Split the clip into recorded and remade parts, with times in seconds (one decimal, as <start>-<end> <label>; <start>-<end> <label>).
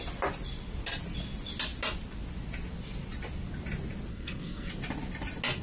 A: 0.0-4.1 recorded; 4.1-4.7 remade; 4.7-5.6 recorded